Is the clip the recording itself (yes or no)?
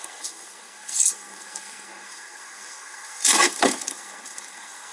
no